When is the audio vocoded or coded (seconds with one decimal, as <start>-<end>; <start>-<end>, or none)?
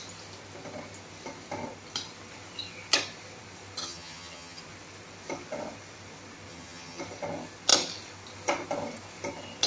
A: 3.8-4.6; 6.5-7.0